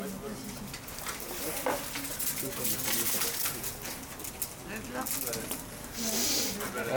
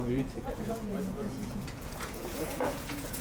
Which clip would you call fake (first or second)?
second